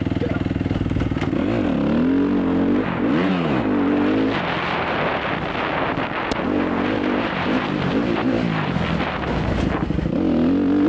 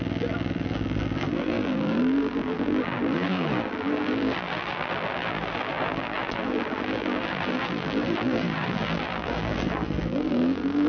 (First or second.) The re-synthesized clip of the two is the second